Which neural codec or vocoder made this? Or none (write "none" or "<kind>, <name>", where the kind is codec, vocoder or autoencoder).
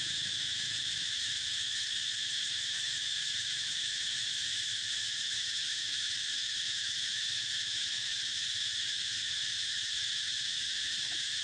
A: autoencoder, DAC-VAE